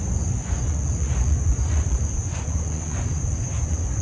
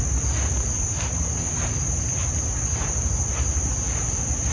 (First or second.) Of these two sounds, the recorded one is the second